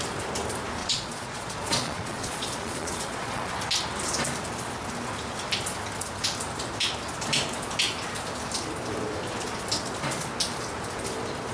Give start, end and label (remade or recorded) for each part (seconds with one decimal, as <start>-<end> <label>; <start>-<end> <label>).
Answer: 0.0-0.8 recorded; 0.8-3.5 remade; 3.5-11.5 recorded